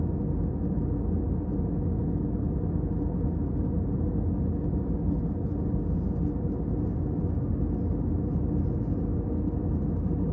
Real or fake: real